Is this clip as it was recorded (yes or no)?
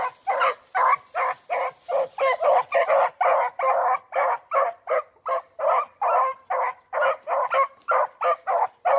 yes